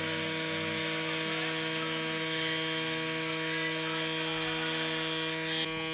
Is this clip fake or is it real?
real